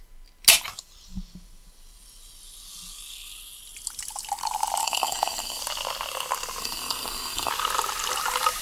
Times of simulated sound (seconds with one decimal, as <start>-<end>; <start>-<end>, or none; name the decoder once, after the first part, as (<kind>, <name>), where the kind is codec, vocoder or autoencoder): 4.8-5.6 (codec, SNAC); 6.6-7.5